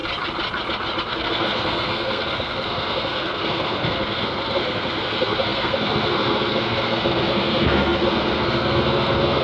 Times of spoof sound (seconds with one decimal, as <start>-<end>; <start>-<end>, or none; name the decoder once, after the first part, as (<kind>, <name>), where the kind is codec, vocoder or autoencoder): 1.0-9.4 (codec, SNAC)